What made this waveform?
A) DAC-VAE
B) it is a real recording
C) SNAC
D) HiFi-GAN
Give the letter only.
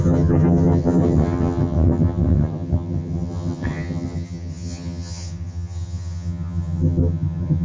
D